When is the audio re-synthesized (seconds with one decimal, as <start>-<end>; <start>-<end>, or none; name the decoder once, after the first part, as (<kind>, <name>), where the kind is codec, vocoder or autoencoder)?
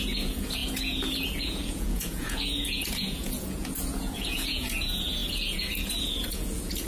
0.0-6.9 (vocoder, Vocos)